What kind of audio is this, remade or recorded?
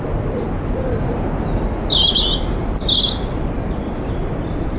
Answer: recorded